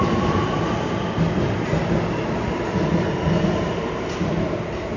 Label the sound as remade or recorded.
recorded